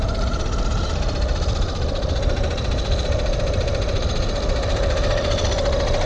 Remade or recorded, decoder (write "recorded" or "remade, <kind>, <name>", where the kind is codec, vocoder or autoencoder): recorded